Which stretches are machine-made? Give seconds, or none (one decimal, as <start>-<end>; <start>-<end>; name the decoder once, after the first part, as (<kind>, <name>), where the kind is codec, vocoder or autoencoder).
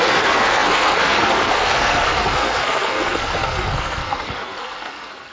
0.0-5.3 (codec, SNAC)